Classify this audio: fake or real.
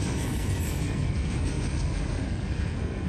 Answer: fake